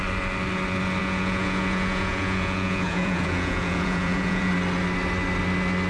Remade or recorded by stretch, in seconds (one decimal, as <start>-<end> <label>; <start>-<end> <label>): 0.0-1.0 recorded; 1.0-4.5 remade; 4.5-5.9 recorded

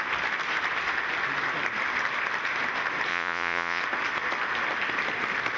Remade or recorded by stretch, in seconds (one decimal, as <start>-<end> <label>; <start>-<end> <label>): 0.0-3.1 recorded; 3.1-3.8 remade; 3.8-5.6 recorded

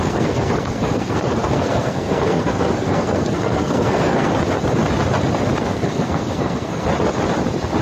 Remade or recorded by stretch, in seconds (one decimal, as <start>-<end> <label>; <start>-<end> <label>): 0.0-4.3 remade; 4.3-5.6 recorded; 5.6-6.9 remade; 6.9-7.8 recorded

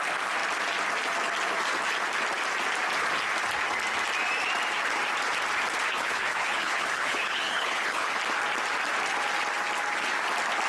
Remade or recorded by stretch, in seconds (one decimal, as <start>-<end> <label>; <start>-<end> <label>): 0.0-5.9 recorded; 5.9-8.2 remade; 8.2-10.7 recorded

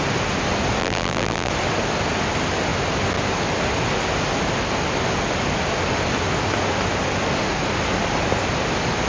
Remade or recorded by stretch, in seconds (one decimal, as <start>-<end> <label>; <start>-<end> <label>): 0.0-0.8 recorded; 0.8-1.5 remade; 1.5-9.1 recorded

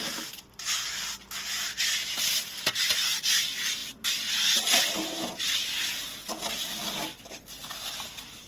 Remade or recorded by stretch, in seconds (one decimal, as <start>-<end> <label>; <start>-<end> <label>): 0.0-8.5 recorded